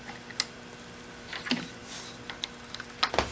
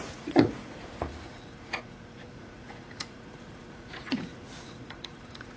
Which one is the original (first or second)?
first